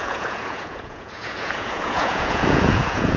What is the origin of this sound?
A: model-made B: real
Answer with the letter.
A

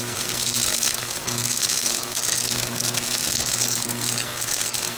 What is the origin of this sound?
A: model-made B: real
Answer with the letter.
A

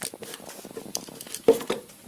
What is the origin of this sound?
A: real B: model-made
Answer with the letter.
B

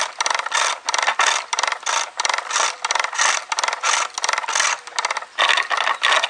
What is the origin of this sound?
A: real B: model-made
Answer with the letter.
A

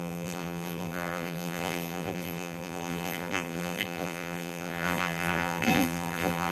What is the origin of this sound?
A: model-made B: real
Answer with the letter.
A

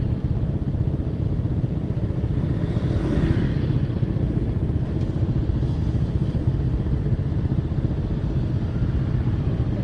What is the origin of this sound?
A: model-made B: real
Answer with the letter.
A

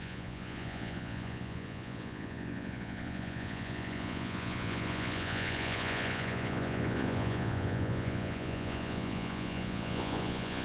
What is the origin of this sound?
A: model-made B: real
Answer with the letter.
A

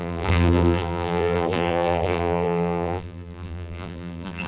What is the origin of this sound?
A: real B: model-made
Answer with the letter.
B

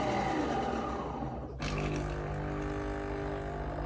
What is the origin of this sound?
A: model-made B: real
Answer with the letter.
B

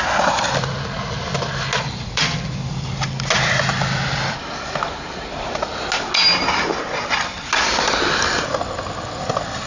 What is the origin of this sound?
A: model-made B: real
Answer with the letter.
B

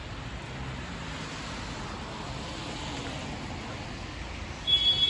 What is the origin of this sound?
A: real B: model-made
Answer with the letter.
A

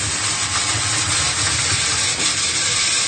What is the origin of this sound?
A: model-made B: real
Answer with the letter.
B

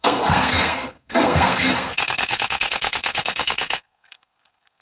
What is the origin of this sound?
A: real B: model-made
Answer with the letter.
B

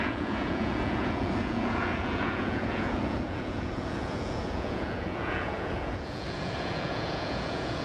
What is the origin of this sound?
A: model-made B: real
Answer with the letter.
A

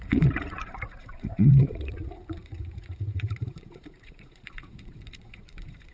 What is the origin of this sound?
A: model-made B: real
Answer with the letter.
A